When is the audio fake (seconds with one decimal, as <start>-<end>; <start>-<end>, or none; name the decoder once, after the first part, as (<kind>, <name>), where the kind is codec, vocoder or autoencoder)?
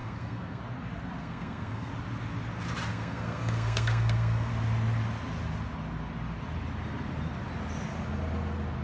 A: 0.0-0.6 (codec, SNAC); 1.2-1.9; 2.9-4.5